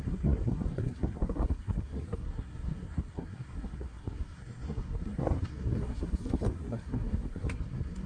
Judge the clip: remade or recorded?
remade